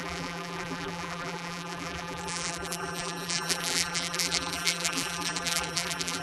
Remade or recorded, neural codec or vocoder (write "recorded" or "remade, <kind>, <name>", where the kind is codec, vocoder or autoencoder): remade, vocoder, BigVGAN v2